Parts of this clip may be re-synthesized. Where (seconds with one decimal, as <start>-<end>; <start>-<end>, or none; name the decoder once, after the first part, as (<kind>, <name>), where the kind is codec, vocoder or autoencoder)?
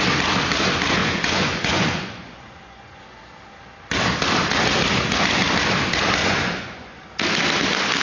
1.0-3.2 (vocoder, Vocos); 6.2-7.0